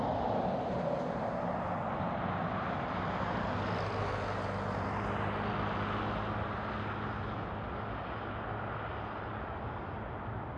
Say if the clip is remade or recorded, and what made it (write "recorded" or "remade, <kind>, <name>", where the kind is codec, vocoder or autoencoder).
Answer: recorded